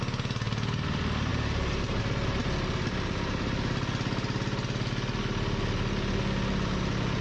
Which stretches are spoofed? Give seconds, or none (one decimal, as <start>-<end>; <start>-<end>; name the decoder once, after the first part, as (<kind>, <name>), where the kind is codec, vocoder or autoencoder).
1.3-2.0 (vocoder, BigVGAN v2)